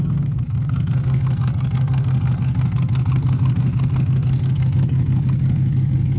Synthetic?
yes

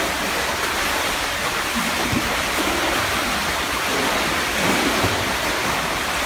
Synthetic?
yes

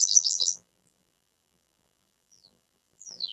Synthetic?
yes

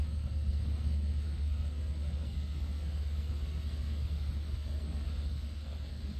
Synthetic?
yes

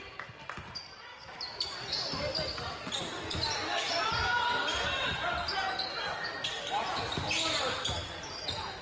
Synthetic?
no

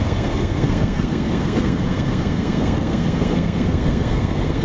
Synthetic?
yes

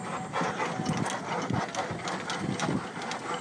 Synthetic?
no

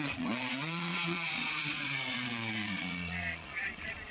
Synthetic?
yes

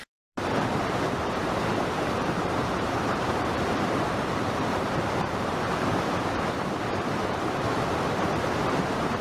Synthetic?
yes